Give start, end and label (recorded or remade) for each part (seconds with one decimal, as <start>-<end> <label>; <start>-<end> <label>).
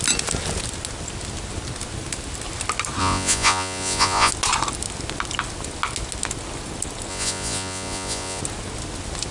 0.0-3.0 recorded; 3.0-4.3 remade; 4.3-7.1 recorded; 7.1-8.4 remade; 8.4-9.3 recorded